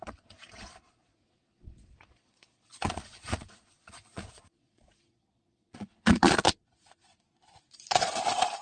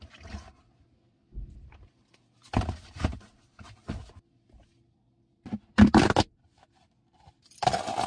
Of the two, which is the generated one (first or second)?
first